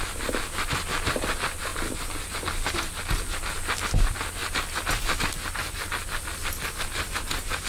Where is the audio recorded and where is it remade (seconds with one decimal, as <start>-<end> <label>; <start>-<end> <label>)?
0.0-7.7 recorded